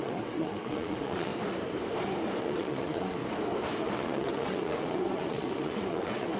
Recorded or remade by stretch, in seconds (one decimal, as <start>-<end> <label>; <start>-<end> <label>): 0.0-1.3 remade; 1.3-2.4 recorded; 2.4-3.2 remade; 3.2-3.8 recorded; 3.8-6.4 remade